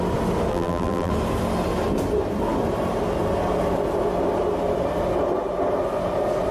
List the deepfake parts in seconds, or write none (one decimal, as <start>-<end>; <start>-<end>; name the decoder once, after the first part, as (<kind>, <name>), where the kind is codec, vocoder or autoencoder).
0.5-1.1 (vocoder, BigVGAN v2)